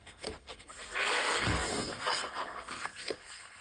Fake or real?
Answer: fake